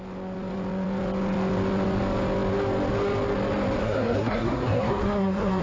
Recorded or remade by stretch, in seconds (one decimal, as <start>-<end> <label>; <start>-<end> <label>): 0.0-3.8 recorded; 3.8-5.6 remade